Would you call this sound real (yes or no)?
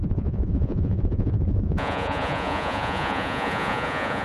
no